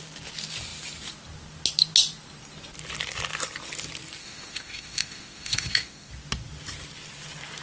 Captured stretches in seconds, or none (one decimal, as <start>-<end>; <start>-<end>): 0.0-4.2; 6.1-7.6